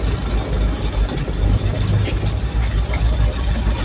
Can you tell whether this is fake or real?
real